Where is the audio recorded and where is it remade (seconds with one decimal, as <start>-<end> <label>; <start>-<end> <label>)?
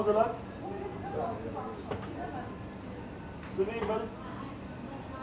0.0-5.2 recorded